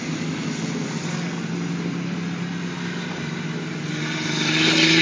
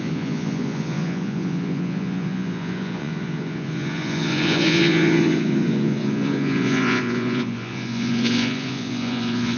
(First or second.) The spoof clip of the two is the second